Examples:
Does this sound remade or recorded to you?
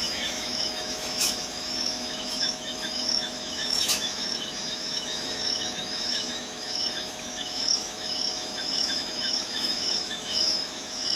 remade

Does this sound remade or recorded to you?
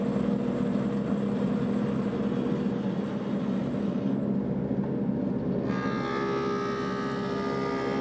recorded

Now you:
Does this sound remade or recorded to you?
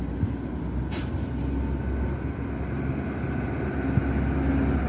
recorded